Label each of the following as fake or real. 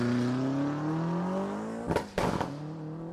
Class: real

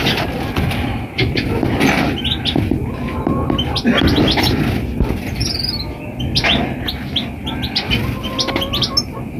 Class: real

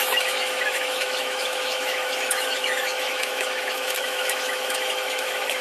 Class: fake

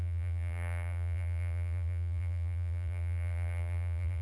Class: fake